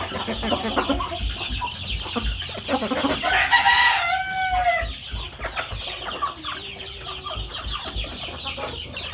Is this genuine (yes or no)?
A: yes